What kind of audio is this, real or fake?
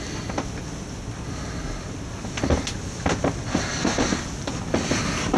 real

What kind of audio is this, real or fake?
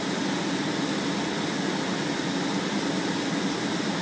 real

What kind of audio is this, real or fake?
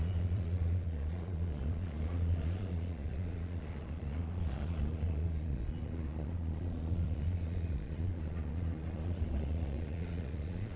fake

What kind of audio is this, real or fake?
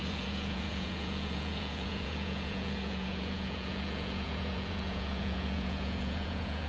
fake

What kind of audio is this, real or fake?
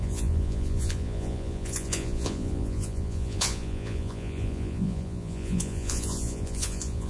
fake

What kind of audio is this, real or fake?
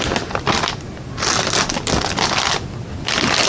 real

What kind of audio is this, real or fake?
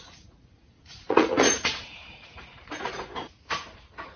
fake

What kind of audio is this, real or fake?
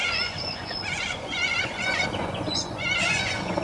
fake